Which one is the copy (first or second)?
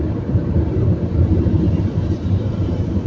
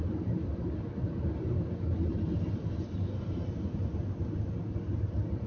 first